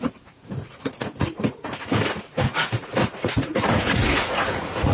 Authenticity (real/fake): fake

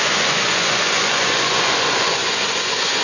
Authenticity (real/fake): fake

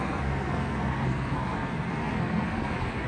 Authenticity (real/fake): fake